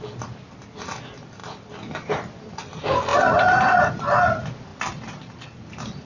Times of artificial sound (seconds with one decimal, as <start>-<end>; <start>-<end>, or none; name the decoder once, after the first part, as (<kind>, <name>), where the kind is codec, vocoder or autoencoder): none